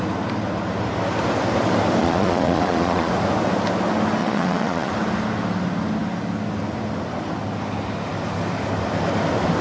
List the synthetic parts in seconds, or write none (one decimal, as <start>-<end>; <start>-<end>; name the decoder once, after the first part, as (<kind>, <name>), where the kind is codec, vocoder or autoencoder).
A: 2.0-3.1 (vocoder, Vocos); 4.2-4.9